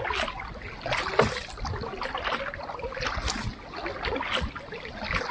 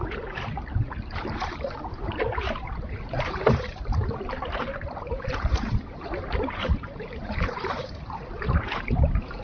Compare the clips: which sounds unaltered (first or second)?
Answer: first